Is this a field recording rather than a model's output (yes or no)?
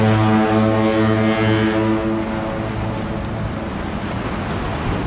yes